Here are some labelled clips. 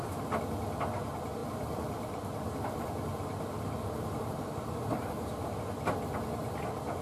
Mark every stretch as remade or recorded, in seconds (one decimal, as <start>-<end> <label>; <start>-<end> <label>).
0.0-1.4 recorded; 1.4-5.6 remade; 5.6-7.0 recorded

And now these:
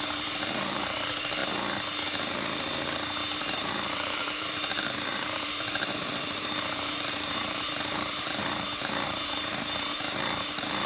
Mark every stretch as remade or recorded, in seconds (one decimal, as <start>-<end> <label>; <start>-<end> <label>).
0.0-1.4 remade; 1.4-3.4 recorded; 3.4-10.9 remade

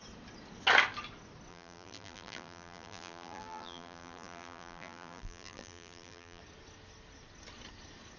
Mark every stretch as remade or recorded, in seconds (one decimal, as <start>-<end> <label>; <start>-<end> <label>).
0.0-1.5 recorded; 1.5-6.4 remade; 6.4-8.2 recorded

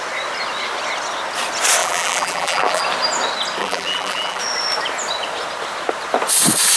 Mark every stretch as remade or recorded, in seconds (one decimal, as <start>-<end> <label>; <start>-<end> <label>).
0.0-1.8 recorded; 1.8-2.8 remade; 2.8-3.6 recorded; 3.6-4.4 remade; 4.4-6.8 recorded

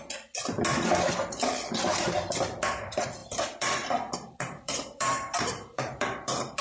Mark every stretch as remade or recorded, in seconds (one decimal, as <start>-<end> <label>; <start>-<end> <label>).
0.0-3.2 recorded; 3.2-6.6 remade